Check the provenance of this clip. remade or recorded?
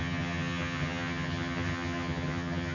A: remade